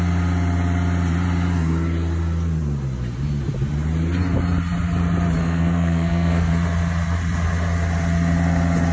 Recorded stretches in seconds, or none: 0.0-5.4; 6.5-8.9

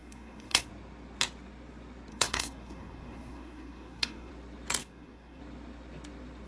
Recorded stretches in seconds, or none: 0.7-2.1; 4.3-4.8; 5.4-6.5

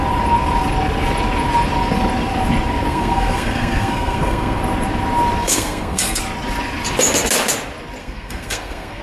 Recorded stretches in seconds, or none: 0.0-2.9; 4.6-5.4; 6.2-8.0

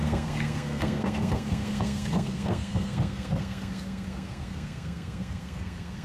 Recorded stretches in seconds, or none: none

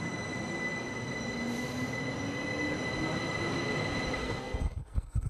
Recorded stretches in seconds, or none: 0.0-4.2

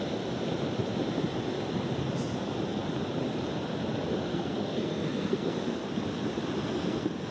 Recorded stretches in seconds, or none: 0.0-4.3; 5.9-6.6